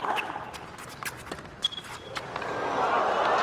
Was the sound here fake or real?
real